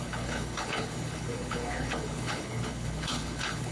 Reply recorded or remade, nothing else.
remade